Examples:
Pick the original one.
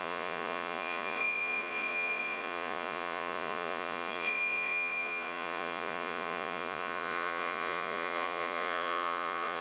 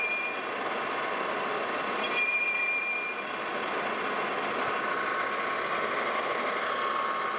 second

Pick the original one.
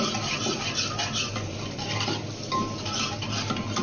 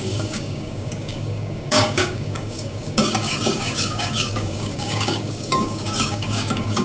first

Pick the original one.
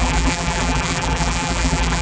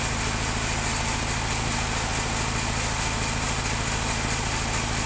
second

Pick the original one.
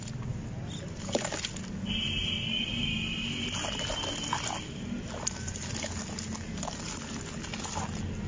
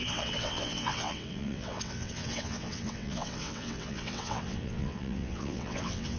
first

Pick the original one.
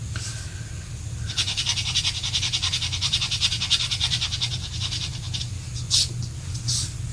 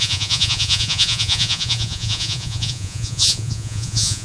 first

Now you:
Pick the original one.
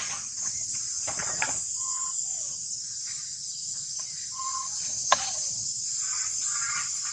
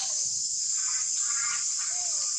second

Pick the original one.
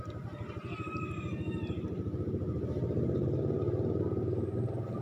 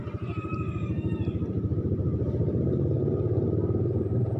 first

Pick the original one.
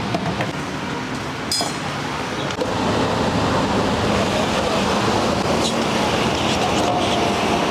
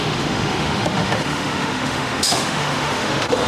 first